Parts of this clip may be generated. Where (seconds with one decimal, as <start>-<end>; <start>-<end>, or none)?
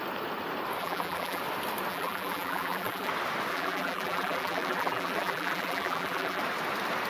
0.8-1.4; 1.9-3.1; 3.5-6.4